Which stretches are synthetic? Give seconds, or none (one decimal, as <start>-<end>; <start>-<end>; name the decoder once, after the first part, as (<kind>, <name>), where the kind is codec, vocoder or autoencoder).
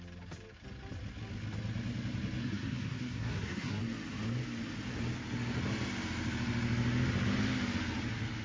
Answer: 2.4-3.8 (codec, SNAC)